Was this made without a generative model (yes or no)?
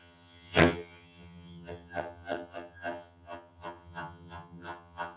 no